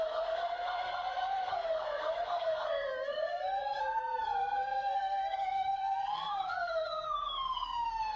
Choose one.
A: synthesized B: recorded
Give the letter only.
A